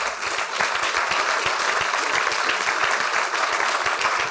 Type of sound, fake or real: real